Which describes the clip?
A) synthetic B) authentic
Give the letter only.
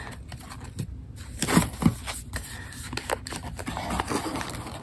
B